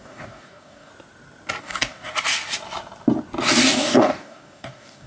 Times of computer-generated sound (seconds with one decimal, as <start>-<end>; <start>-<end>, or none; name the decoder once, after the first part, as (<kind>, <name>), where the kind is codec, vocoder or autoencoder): 0.0-0.9 (codec, DAC); 1.6-2.1; 3.6-5.1